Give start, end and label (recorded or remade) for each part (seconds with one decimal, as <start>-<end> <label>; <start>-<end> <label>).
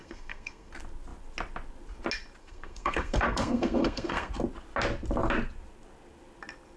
0.0-0.7 remade; 0.7-2.4 recorded; 2.4-4.3 remade; 4.3-6.8 recorded